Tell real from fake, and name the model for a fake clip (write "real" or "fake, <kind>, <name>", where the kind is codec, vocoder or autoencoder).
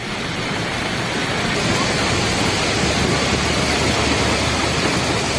real